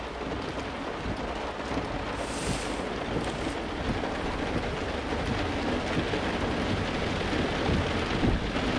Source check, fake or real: real